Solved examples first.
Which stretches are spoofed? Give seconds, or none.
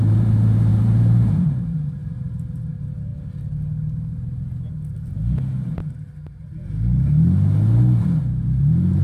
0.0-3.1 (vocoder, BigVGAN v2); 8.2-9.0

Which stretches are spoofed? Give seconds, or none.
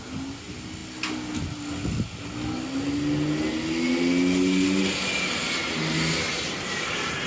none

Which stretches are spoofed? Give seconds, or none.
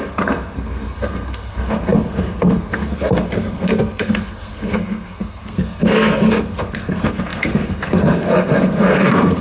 0.0-9.4 (codec, SNAC)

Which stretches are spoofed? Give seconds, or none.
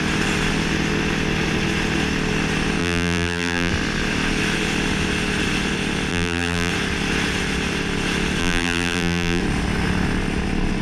2.8-3.7 (vocoder, BigVGAN v2); 6.1-6.7; 8.4-9.4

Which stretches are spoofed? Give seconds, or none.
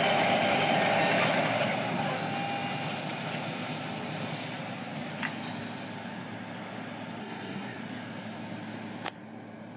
7.2-7.8 (codec, SNAC)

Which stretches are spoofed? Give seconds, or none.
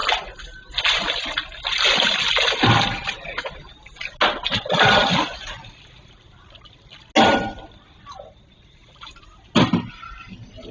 none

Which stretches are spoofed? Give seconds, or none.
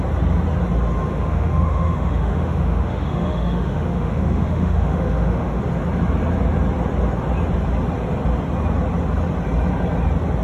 1.1-5.6 (autoencoder, DAC-VAE)